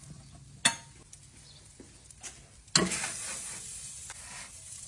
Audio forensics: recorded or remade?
recorded